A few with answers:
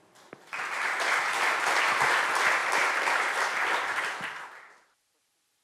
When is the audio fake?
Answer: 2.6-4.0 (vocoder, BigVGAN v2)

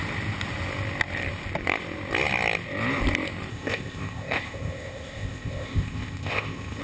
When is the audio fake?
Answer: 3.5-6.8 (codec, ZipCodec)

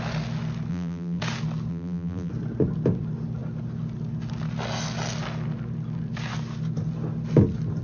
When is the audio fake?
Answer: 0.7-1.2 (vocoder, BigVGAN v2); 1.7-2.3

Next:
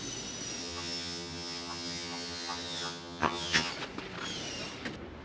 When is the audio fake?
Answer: 0.6-3.7 (vocoder, HiFi-GAN)